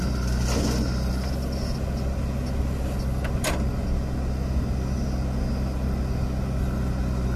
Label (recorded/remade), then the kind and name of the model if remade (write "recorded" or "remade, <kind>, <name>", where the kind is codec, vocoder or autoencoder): recorded